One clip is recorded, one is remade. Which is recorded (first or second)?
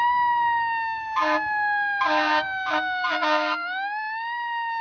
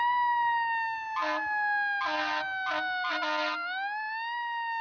second